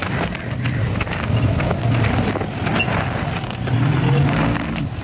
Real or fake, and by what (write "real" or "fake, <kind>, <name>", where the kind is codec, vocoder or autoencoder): real